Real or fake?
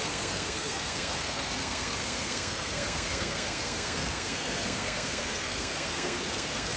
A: fake